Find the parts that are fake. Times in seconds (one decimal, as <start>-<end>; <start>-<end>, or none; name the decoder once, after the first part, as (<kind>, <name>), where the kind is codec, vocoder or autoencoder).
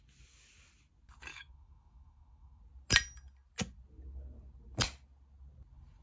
1.3-2.6 (autoencoder, DAC-VAE)